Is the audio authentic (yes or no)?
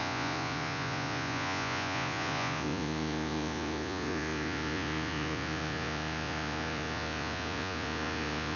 no